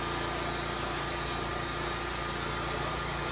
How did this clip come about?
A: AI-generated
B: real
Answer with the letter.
B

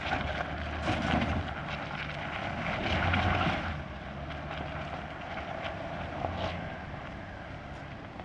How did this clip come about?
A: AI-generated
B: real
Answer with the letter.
B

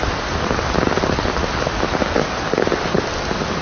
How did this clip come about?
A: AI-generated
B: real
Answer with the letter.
B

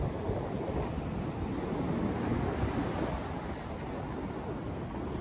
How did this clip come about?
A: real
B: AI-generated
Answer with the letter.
A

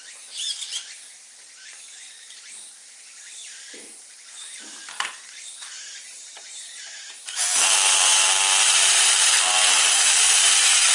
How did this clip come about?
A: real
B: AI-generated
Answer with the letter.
B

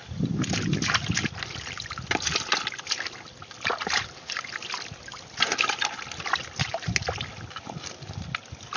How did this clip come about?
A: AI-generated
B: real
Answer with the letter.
B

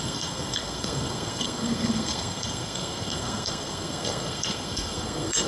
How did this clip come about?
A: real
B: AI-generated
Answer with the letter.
B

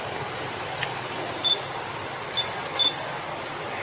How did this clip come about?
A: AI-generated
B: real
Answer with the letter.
B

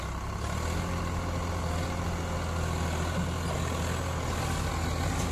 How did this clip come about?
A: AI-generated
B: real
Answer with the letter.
B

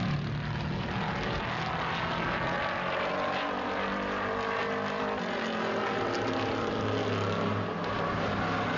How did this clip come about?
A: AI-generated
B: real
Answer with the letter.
B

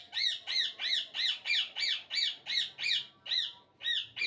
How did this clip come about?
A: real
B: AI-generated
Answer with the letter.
A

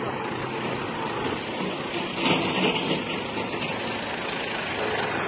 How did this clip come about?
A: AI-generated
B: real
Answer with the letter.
B